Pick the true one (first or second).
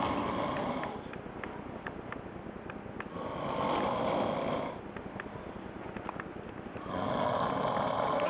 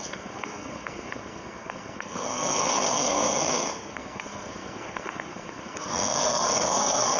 first